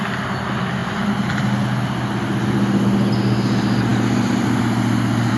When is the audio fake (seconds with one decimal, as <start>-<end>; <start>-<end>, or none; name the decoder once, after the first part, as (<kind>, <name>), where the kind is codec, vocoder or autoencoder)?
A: none